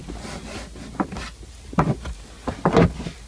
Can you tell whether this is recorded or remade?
recorded